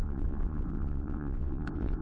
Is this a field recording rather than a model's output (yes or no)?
no